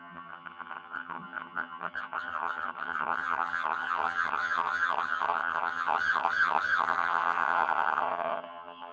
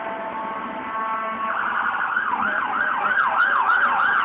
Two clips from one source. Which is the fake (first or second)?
first